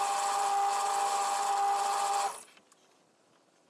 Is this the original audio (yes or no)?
yes